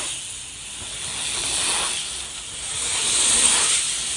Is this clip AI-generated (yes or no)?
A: no